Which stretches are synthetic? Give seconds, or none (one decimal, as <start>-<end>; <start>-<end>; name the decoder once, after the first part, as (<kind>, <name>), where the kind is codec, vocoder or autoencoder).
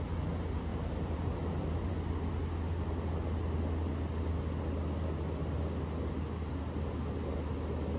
0.7-1.9 (vocoder, BigVGAN v2)